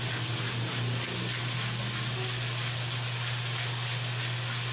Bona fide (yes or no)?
yes